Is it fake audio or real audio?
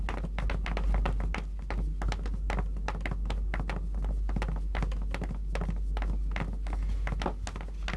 real